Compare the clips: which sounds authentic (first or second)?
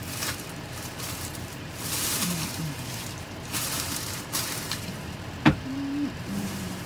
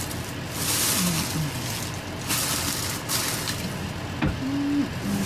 second